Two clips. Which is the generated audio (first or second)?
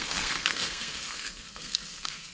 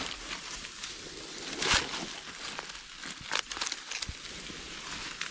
first